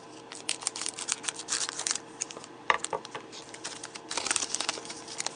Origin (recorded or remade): remade